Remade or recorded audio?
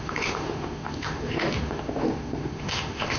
remade